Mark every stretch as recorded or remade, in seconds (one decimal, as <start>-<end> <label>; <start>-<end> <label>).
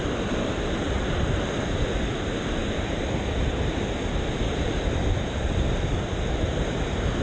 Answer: 0.0-7.2 recorded